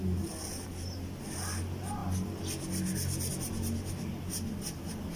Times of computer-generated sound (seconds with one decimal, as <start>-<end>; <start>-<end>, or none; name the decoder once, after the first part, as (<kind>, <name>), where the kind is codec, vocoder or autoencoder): none